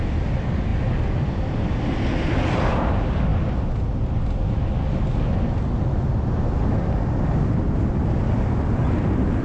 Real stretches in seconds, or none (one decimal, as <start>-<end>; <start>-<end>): 0.0-9.4